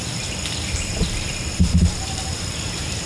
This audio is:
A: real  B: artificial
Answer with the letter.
B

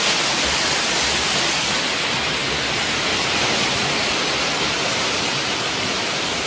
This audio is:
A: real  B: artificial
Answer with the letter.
A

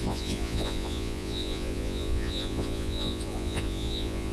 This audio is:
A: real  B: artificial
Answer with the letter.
B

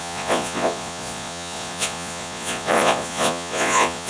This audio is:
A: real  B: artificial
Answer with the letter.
B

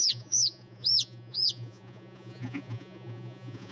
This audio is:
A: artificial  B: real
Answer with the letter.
A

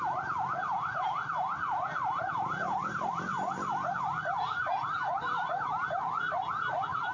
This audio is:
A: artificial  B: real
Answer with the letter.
A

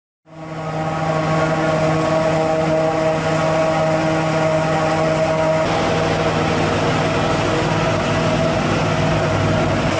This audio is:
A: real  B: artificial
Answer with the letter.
A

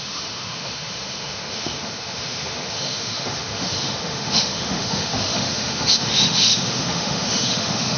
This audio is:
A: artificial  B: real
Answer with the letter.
A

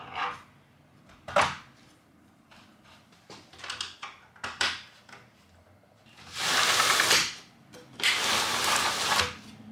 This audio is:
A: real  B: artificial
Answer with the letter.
A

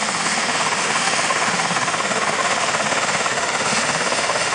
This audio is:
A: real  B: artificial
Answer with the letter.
B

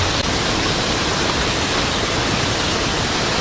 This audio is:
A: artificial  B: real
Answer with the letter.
B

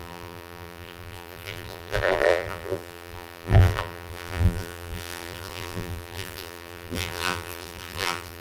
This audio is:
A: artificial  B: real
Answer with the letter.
A